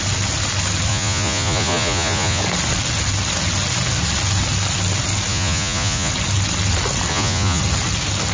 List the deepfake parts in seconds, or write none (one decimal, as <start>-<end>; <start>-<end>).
0.9-2.4; 5.3-6.1; 7.1-7.6